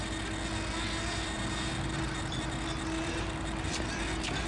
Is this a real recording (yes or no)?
yes